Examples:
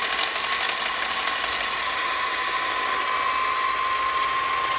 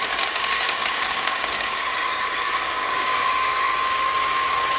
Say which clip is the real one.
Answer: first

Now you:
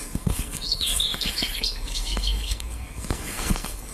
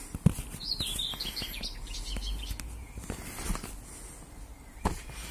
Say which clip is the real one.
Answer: second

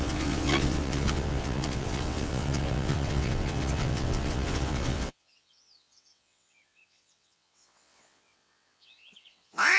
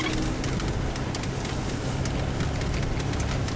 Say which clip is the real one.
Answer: second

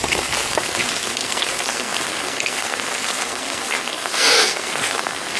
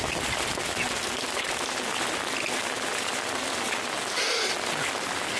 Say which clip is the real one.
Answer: second